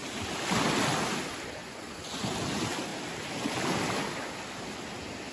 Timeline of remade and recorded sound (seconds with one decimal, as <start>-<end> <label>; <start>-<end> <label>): 0.0-1.6 recorded; 1.6-2.3 remade; 2.3-5.3 recorded